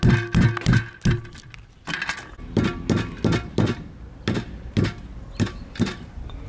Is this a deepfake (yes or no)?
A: no